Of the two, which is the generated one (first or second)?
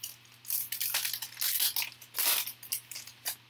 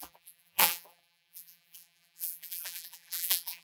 second